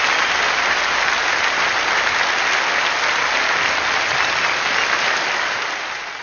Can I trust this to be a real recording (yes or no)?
yes